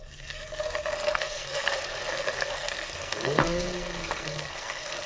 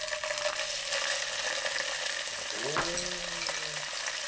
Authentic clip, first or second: second